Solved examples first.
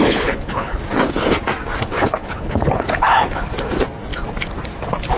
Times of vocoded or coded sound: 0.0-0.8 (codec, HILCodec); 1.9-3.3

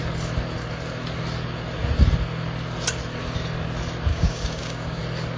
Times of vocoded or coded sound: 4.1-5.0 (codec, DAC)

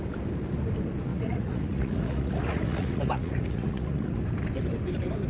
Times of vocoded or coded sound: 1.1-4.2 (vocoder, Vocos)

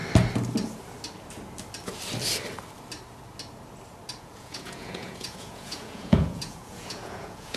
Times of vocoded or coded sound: 4.2-7.6 (vocoder, Vocos)

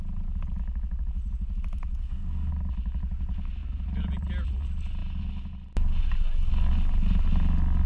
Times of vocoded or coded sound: 2.0-2.5 (codec, SNAC)

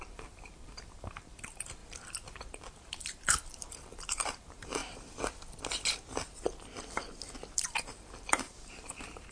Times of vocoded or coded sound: 0.0-1.8 (vocoder, BigVGAN v2); 2.4-4.8; 7.5-9.3

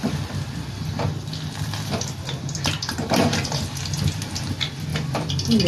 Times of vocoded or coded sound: none